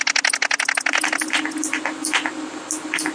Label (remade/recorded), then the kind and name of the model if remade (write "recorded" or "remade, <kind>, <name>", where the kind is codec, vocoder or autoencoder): recorded